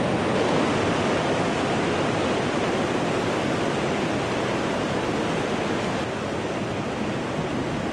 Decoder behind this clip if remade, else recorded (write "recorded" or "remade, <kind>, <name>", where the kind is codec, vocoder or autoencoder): recorded